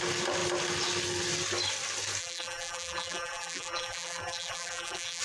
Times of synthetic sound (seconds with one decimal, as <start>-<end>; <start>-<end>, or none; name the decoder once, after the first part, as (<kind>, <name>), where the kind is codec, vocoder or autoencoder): 2.2-5.2 (vocoder, BigVGAN v2)